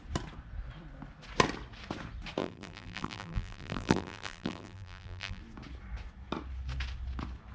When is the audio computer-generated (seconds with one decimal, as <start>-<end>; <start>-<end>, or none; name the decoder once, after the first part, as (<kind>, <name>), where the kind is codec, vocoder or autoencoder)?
2.4-5.4 (vocoder, BigVGAN v2)